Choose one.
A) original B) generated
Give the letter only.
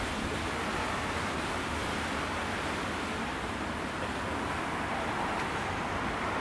A